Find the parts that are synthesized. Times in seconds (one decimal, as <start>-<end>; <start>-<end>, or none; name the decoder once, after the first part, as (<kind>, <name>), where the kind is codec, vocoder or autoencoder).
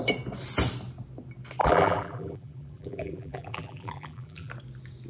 1.6-4.5 (vocoder, BigVGAN v2)